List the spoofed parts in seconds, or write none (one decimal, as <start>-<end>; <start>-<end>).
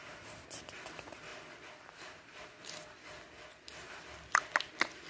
none